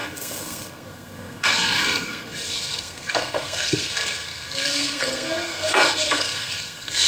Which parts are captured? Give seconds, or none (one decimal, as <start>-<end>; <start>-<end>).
none